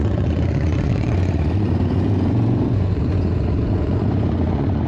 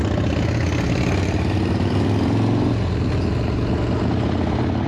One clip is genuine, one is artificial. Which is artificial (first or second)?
first